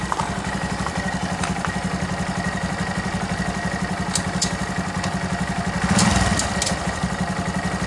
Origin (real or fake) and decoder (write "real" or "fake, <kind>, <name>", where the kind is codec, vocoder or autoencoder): real